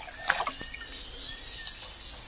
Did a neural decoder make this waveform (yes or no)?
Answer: no